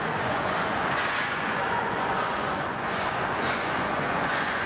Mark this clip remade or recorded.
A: remade